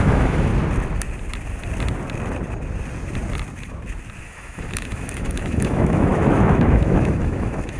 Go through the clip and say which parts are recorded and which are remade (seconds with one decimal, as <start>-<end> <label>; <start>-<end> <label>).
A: 0.0-0.5 remade; 0.5-4.2 recorded; 4.2-7.8 remade